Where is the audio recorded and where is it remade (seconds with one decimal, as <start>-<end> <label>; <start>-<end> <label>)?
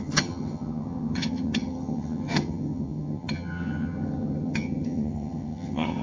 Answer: 0.0-6.0 remade